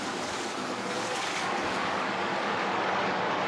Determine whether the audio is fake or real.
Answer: fake